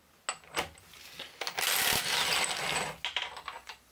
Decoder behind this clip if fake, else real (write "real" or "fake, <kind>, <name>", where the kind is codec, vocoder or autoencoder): real